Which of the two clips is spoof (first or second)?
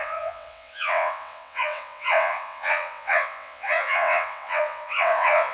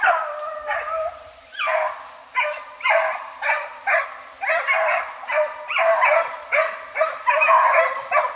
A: first